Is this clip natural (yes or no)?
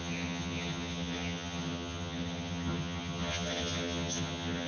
no